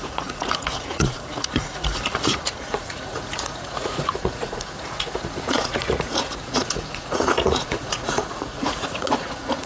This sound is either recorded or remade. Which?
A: remade